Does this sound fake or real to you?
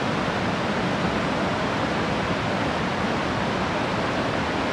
real